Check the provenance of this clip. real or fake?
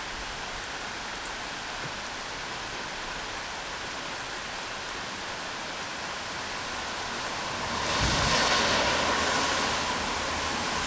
real